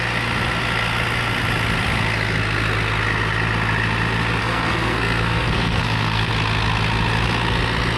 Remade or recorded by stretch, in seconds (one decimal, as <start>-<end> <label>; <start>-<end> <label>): 0.0-4.4 recorded; 4.4-6.3 remade; 6.3-8.0 recorded